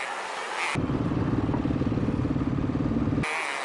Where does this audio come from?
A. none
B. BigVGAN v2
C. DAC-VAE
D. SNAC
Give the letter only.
A